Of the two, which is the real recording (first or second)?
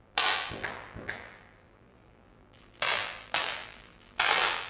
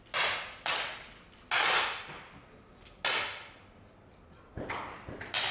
second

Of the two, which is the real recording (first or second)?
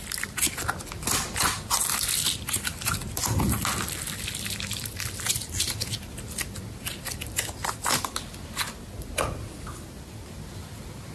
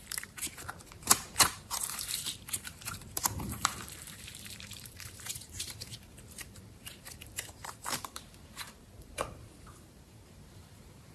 first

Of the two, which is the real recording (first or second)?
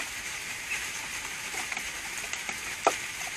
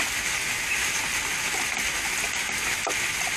second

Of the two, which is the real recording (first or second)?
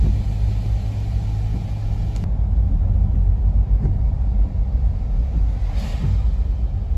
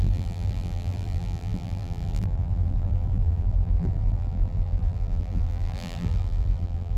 first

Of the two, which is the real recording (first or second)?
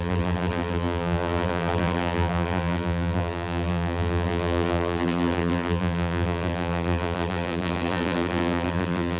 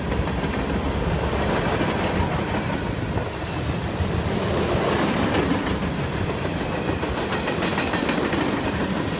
second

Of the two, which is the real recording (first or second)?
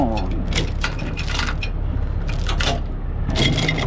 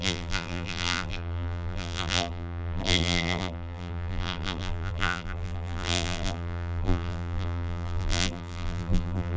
first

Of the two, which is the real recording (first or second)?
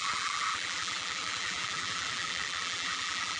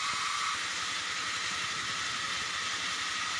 second